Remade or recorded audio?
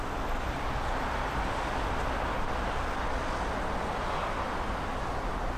recorded